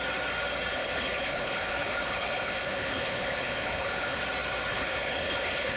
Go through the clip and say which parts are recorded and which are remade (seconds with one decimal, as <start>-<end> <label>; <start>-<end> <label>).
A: 0.0-0.7 recorded; 0.7-4.2 remade; 4.2-4.7 recorded; 4.7-5.8 remade